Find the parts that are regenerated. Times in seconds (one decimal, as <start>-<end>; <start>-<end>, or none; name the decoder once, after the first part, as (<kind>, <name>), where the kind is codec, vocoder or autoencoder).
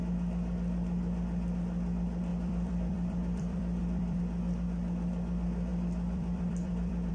2.3-4.2 (vocoder, BigVGAN v2); 5.7-7.1